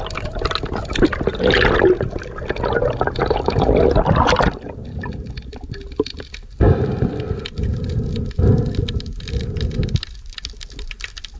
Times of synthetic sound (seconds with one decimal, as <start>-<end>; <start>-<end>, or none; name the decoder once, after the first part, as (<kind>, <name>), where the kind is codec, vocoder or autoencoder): none